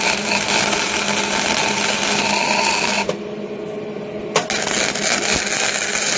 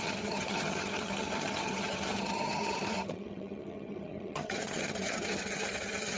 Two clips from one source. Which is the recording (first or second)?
first